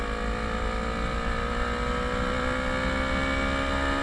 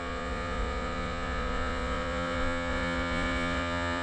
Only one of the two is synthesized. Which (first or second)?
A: second